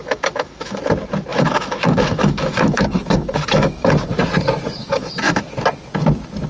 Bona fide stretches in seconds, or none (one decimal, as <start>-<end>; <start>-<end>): 0.8-1.3; 3.9-4.8; 5.4-6.5